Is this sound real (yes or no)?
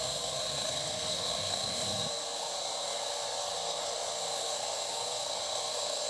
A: no